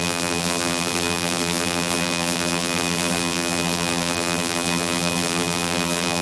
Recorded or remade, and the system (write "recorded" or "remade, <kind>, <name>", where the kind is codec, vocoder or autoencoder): remade, vocoder, BigVGAN v2